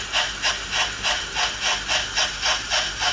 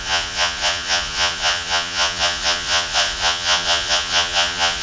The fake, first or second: second